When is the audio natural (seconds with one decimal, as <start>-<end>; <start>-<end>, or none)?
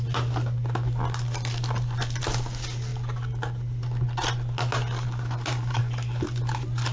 0.0-6.9